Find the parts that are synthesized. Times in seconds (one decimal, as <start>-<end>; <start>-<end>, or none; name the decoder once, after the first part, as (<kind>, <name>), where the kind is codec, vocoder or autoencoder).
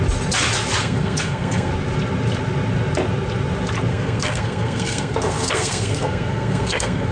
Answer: 0.8-1.7 (codec, SNAC); 3.9-7.1